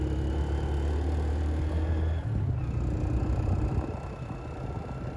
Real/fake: real